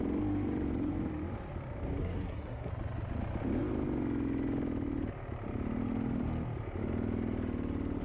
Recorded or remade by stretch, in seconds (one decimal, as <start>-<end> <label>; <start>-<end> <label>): 0.0-2.0 recorded; 2.0-2.7 remade; 2.7-8.0 recorded